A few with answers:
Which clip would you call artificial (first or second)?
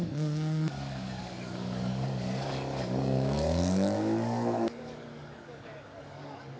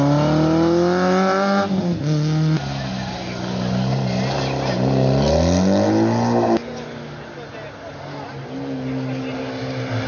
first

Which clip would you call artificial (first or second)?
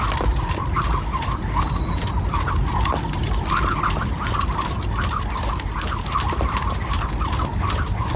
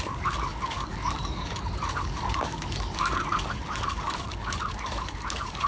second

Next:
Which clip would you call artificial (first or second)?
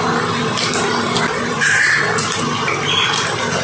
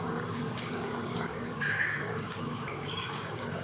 second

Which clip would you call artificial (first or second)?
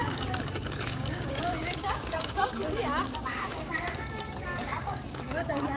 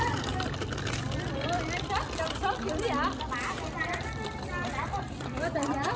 first